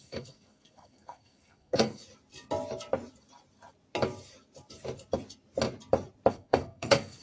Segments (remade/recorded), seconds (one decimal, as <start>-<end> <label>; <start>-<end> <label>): 0.0-2.0 remade; 2.0-6.3 recorded; 6.3-7.2 remade